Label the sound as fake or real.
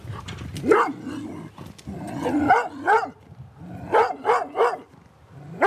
real